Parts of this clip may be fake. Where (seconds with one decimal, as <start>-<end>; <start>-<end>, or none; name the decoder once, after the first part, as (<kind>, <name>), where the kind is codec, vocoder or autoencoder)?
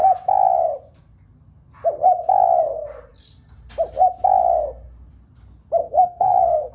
5.8-6.7 (codec, SNAC)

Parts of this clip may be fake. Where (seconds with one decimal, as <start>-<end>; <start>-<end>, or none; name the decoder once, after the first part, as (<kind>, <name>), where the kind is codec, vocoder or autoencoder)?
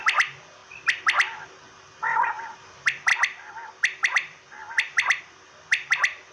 none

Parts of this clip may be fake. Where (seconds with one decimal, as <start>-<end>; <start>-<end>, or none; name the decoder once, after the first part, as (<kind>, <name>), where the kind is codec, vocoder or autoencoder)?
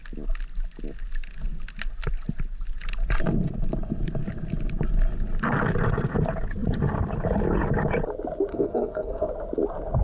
8.5-9.3 (codec, SNAC)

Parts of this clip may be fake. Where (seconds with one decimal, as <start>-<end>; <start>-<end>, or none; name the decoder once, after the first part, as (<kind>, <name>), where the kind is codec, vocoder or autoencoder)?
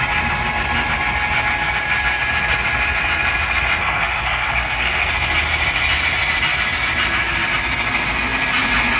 3.8-5.1 (codec, SNAC)